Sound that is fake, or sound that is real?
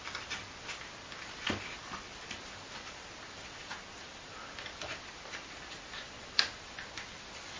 fake